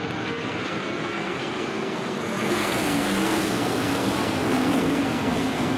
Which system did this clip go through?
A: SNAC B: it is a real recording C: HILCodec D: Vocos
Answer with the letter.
A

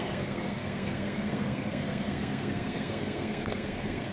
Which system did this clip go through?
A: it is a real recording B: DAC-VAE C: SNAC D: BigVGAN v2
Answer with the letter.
C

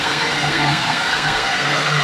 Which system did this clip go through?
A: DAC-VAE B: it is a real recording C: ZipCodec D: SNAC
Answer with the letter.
D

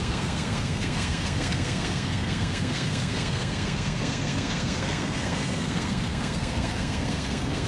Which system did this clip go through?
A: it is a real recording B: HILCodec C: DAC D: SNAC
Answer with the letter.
D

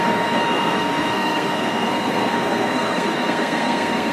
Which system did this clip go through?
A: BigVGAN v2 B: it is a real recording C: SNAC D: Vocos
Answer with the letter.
C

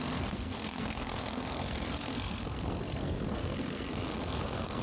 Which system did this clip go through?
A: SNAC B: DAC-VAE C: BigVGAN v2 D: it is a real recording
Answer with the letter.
A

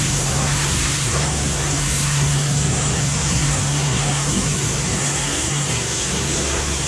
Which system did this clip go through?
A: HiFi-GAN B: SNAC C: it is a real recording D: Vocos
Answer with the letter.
B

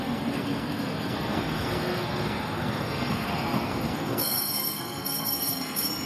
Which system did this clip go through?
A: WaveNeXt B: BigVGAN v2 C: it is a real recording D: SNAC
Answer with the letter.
D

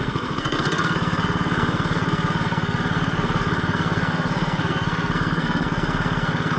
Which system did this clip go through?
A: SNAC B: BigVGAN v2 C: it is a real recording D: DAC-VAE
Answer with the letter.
A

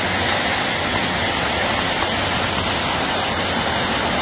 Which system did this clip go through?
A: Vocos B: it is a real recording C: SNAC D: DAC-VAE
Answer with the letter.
B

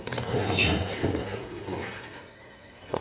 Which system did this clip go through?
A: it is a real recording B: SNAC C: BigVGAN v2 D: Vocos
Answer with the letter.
B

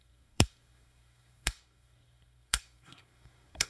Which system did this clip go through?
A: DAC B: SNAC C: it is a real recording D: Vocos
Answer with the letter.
B